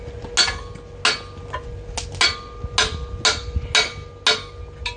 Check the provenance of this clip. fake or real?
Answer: real